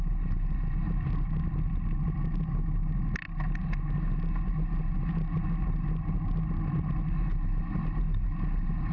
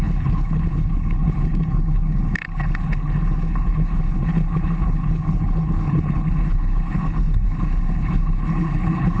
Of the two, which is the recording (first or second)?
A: first